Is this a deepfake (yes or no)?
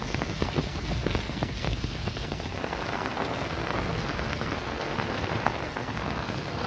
yes